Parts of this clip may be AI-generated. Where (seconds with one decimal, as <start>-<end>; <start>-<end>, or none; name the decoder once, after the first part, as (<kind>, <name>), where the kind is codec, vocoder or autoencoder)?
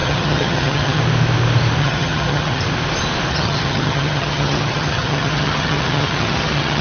0.0-1.0 (vocoder, HiFi-GAN); 1.8-2.6; 3.3-6.8